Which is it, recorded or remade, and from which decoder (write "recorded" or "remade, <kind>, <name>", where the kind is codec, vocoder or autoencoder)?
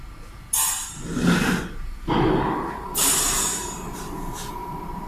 recorded